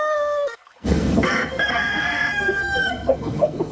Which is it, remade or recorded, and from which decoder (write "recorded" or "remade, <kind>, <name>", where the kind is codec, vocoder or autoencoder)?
remade, codec, SNAC